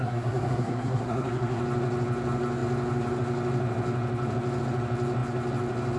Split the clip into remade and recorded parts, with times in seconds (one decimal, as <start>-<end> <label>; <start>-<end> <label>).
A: 0.0-1.6 remade; 1.6-6.0 recorded

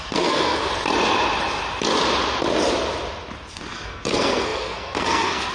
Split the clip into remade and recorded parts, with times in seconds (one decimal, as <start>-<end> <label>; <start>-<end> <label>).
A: 0.0-0.7 remade; 0.7-3.5 recorded; 3.5-5.5 remade

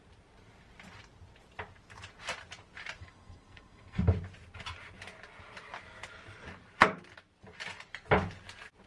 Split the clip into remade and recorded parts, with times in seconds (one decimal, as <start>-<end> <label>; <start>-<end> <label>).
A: 0.0-3.0 recorded; 3.0-4.0 remade; 4.0-8.9 recorded

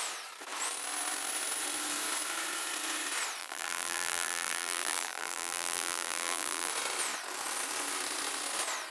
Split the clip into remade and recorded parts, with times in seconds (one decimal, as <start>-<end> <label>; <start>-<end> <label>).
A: 0.0-3.4 recorded; 3.4-6.7 remade; 6.7-8.9 recorded

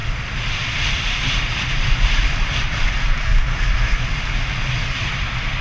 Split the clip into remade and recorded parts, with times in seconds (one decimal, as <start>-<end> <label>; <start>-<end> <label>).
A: 0.0-3.3 remade; 3.3-4.8 recorded; 4.8-5.6 remade